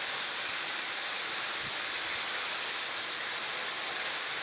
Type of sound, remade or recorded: recorded